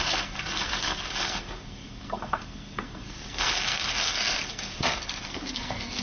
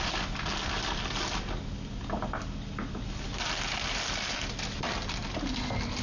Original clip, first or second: second